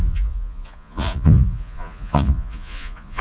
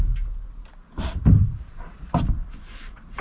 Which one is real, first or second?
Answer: second